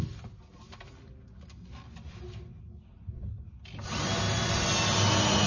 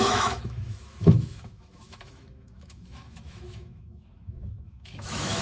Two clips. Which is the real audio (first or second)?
first